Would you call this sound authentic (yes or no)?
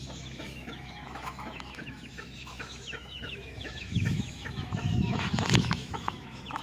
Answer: no